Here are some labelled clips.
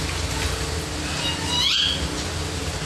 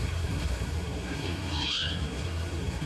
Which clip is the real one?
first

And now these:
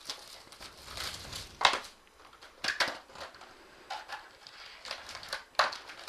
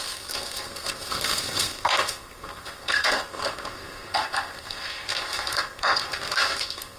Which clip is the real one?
first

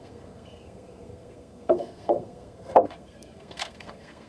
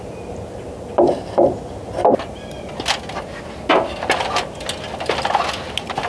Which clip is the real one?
second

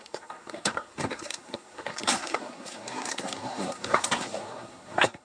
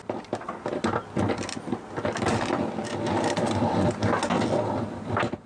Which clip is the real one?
second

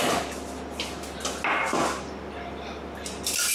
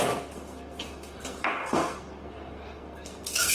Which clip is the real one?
first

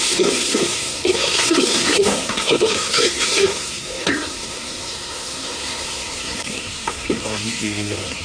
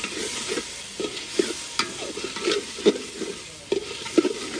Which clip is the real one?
second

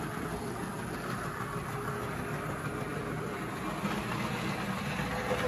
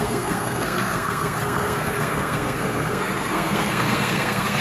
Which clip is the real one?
first